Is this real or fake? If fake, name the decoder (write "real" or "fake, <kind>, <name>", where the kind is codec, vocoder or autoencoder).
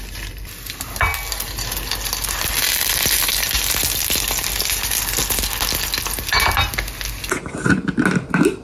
real